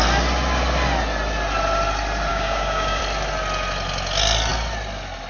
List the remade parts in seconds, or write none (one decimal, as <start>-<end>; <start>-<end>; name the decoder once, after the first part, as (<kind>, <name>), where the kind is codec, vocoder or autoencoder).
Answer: 2.3-3.0 (codec, DAC)